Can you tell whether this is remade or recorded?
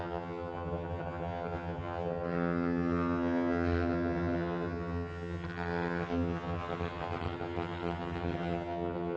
remade